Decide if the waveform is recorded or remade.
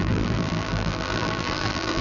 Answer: remade